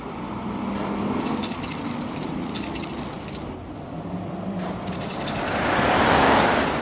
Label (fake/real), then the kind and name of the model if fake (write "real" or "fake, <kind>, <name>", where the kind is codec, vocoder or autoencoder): fake, vocoder, BigVGAN v2